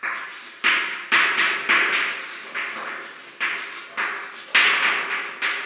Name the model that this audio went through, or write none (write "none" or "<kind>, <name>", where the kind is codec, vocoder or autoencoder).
none